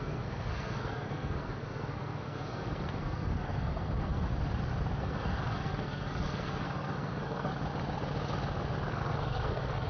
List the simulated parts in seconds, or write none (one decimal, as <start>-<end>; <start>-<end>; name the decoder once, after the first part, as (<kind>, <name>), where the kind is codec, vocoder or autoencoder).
0.0-4.3 (codec, SNAC); 5.0-7.5; 8.9-9.9